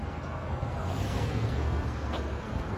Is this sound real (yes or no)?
no